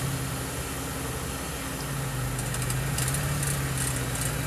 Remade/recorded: recorded